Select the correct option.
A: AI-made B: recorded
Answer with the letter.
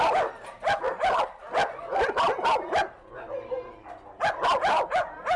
B